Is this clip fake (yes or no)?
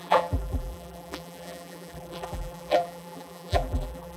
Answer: yes